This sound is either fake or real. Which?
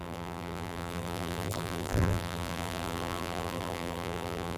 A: fake